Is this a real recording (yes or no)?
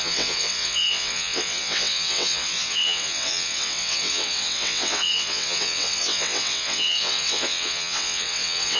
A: no